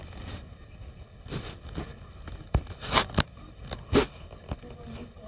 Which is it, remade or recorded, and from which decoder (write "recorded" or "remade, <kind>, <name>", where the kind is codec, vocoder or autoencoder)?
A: recorded